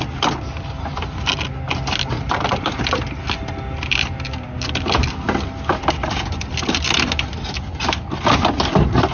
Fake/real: real